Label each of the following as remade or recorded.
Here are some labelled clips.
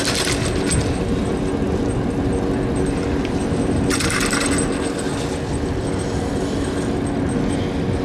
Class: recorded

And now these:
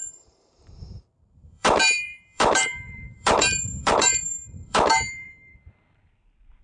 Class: remade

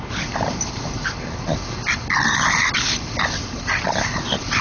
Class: recorded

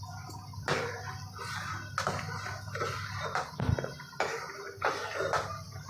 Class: recorded